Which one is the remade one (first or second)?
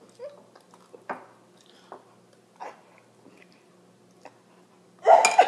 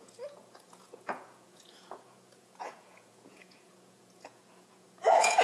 second